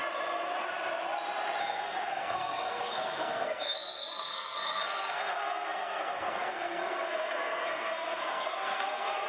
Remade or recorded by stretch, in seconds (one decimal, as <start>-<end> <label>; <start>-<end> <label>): 0.0-1.6 recorded; 1.6-9.3 remade